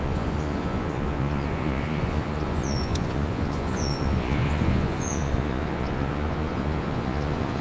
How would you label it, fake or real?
fake